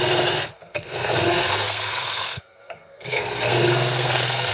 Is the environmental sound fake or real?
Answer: fake